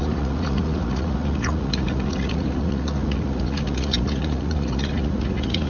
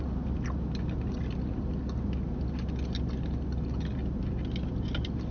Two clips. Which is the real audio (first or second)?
second